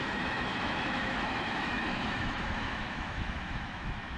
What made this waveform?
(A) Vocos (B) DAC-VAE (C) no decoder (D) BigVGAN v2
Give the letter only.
B